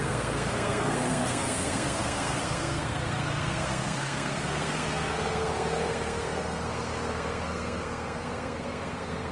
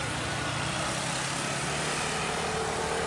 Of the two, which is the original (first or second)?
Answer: second